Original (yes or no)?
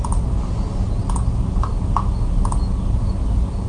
yes